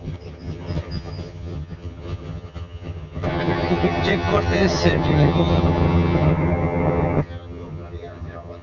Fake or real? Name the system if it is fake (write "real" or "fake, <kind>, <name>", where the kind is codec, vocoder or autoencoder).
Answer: fake, vocoder, HiFi-GAN